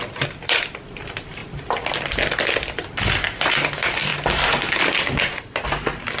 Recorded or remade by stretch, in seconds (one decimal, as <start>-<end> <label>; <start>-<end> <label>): 0.0-6.2 recorded